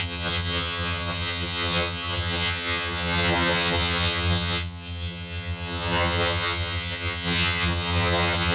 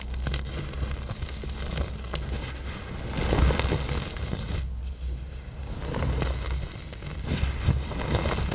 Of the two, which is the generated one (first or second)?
first